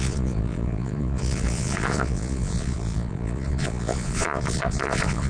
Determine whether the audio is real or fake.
fake